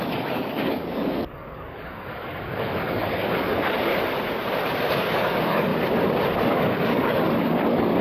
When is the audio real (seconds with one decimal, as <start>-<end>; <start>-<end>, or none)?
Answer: 3.9-4.9; 5.7-6.5